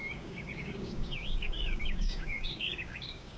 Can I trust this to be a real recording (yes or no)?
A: no